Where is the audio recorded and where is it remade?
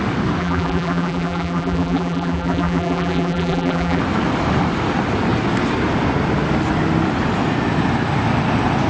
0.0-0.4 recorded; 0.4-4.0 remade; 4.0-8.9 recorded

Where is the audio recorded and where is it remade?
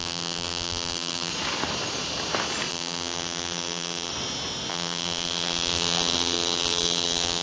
0.0-1.3 remade; 1.3-2.7 recorded; 2.7-4.1 remade; 4.1-4.7 recorded; 4.7-7.4 remade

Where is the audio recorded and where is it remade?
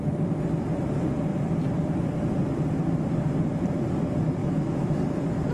0.0-4.4 recorded; 4.4-5.0 remade; 5.0-5.5 recorded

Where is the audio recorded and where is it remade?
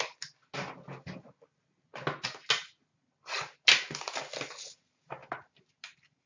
0.0-6.3 recorded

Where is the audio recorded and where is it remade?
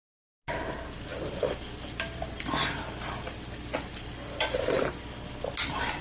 0.0-1.1 recorded; 1.1-4.7 remade; 4.7-6.0 recorded